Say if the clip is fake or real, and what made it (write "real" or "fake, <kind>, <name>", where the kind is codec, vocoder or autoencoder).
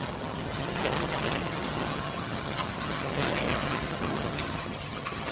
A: fake, vocoder, HiFi-GAN